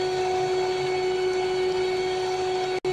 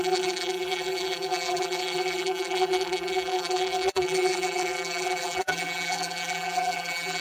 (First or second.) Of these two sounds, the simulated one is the second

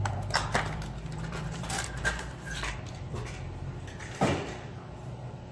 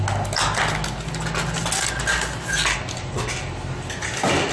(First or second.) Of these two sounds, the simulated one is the first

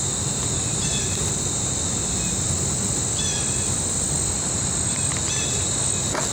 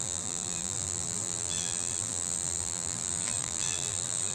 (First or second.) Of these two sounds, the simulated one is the second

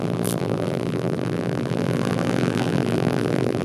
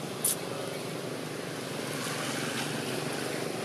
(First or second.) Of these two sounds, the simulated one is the first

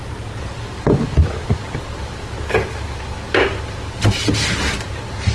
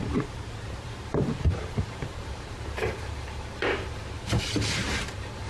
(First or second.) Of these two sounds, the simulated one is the second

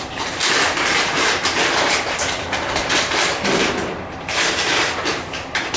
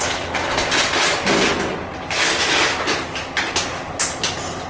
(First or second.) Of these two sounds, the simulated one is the first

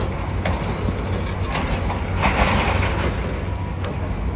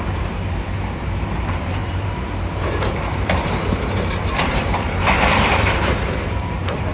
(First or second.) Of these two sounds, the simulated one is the second